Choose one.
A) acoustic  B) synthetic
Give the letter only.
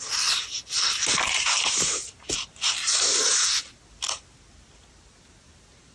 A